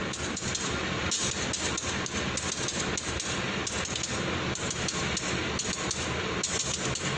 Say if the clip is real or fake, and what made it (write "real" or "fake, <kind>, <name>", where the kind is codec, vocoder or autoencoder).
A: real